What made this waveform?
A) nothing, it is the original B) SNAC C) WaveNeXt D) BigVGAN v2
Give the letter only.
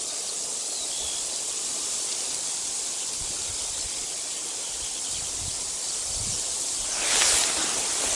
A